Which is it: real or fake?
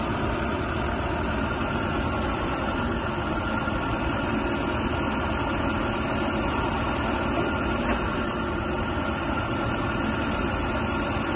real